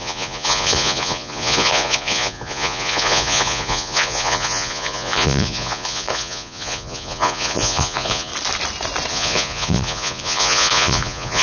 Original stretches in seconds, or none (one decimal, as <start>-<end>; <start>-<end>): 8.3-9.1